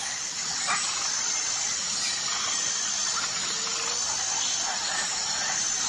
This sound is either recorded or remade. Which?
recorded